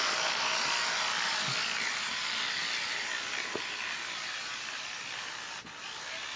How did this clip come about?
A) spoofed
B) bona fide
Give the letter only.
B